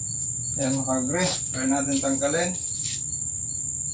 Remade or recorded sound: recorded